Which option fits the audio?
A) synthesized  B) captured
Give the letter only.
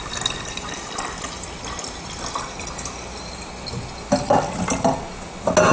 B